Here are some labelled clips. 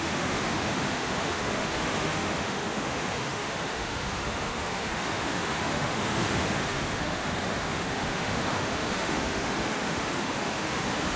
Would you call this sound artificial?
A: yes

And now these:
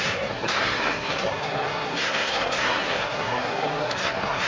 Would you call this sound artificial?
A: yes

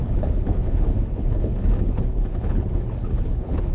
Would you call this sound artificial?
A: yes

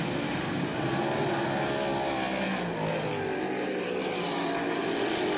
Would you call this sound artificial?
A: no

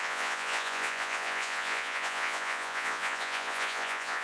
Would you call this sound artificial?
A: yes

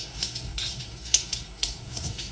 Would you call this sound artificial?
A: yes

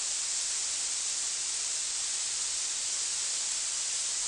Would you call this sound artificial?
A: no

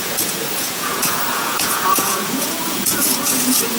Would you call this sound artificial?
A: yes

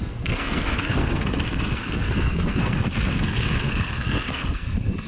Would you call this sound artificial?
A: yes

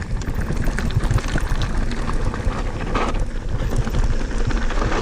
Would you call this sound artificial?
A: no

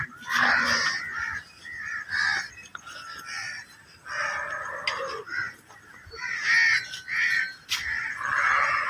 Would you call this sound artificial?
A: no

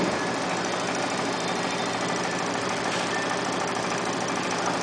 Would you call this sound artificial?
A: no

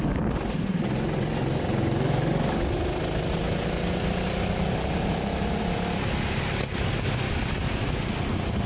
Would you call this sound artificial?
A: no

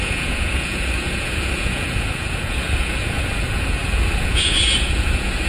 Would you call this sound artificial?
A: yes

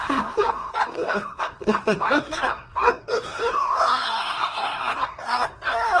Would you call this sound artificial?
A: yes